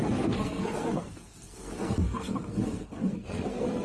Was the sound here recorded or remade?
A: remade